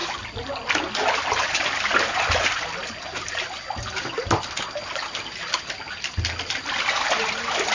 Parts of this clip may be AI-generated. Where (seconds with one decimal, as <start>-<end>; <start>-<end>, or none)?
none